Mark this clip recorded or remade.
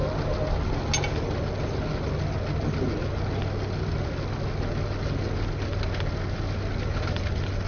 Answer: recorded